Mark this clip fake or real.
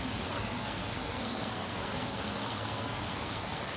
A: fake